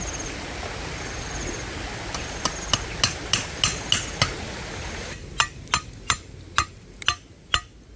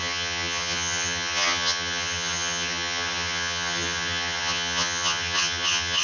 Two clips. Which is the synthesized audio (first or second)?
second